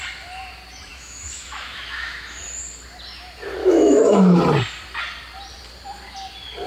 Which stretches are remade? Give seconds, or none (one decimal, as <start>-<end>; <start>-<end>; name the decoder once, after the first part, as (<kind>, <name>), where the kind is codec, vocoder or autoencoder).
0.9-2.4 (autoencoder, DAC-VAE); 3.6-4.4